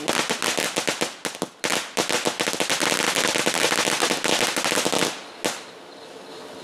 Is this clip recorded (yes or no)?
yes